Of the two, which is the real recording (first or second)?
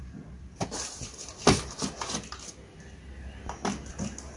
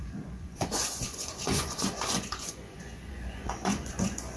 first